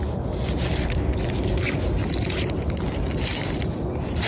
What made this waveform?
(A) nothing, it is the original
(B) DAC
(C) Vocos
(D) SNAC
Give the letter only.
A